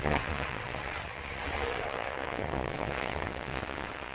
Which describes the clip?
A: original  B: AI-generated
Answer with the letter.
B